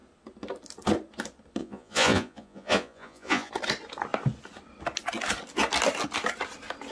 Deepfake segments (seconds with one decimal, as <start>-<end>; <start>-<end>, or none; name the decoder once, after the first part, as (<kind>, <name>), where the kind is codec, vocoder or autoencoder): 1.6-3.5 (vocoder, Vocos)